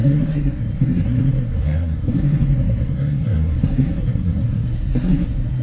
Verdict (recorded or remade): remade